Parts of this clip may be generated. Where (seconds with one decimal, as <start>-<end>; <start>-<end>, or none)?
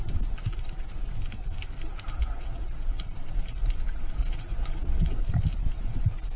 2.2-3.1; 4.2-5.2